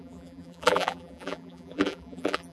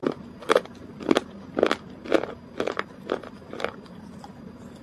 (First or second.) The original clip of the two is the second